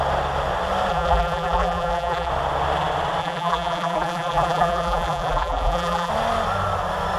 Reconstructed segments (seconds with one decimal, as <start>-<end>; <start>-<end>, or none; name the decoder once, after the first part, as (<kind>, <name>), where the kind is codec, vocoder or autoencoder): 0.9-2.3 (vocoder, BigVGAN v2); 3.2-6.1